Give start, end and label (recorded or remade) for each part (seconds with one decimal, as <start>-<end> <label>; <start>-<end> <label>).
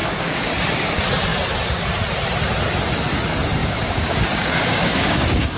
0.0-0.5 remade; 0.5-3.6 recorded; 3.6-5.6 remade